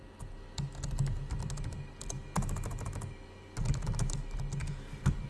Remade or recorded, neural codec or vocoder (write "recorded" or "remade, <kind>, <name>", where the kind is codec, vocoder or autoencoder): recorded